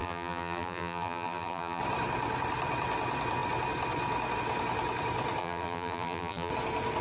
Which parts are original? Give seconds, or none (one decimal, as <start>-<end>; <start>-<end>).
1.8-5.4; 6.5-7.0